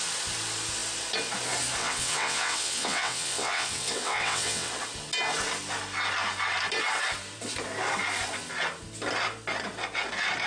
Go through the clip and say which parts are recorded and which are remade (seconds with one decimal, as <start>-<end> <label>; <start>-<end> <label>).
0.0-1.8 recorded; 1.8-4.7 remade; 4.7-10.5 recorded